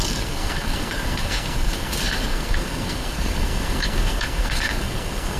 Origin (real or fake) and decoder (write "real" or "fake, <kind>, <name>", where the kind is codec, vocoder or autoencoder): fake, codec, SNAC